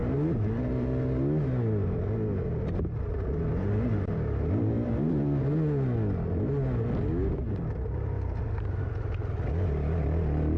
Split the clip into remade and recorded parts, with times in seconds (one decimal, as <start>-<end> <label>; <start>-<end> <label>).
0.0-10.6 recorded